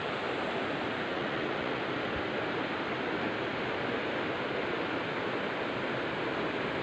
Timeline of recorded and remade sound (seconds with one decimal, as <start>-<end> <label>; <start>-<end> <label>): 0.0-1.1 recorded; 1.1-1.8 remade; 1.8-6.8 recorded